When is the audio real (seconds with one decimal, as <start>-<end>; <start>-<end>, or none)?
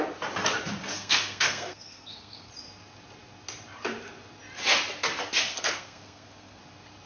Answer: 0.0-0.9; 2.5-5.4; 6.6-7.1